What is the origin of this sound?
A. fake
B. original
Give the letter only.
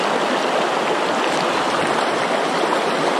B